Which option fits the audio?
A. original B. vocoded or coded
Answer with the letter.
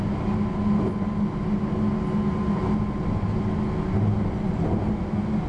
A